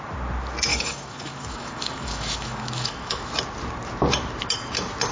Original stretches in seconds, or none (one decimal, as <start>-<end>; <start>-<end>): 0.0-0.7; 3.3-5.1